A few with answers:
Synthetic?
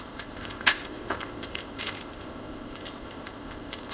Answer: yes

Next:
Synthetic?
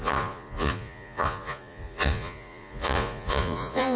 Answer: yes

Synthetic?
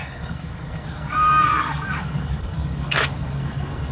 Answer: yes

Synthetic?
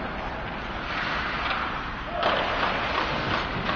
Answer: no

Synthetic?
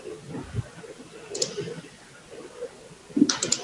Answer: no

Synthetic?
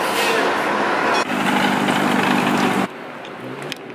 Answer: no